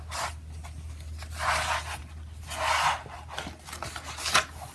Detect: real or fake real